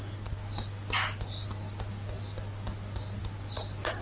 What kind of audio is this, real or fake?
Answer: real